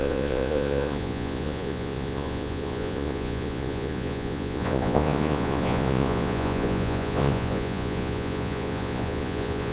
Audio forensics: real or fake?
fake